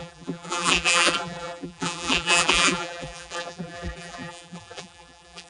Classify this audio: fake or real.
fake